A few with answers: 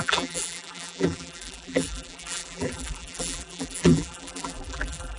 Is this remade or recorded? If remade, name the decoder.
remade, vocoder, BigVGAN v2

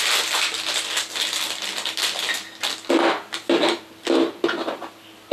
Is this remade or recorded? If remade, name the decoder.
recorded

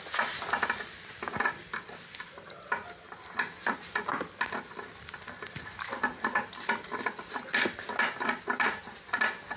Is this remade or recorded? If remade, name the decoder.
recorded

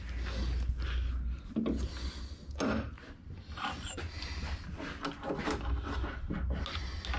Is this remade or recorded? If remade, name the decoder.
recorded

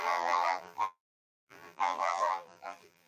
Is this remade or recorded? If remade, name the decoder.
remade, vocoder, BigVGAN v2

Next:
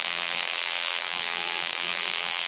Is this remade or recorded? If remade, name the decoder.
remade, vocoder, BigVGAN v2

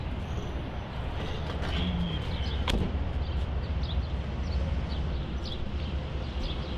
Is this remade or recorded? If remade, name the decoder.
recorded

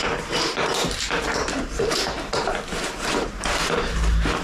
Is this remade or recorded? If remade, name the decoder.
remade, vocoder, BigVGAN v2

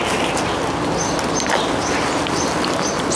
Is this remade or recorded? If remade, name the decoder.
recorded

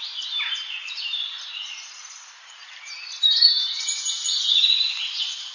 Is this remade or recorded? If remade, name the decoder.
remade, vocoder, BigVGAN v2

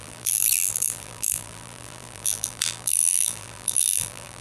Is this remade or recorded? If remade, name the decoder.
remade, vocoder, BigVGAN v2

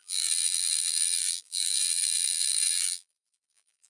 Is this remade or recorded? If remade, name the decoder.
remade, vocoder, BigVGAN v2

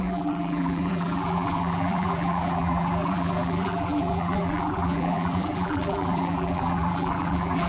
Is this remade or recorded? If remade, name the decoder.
remade, vocoder, BigVGAN v2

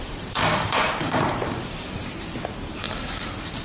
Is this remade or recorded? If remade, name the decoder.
remade, vocoder, BigVGAN v2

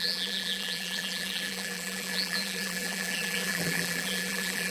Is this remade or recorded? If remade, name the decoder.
remade, vocoder, BigVGAN v2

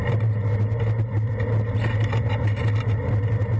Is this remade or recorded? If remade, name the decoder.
recorded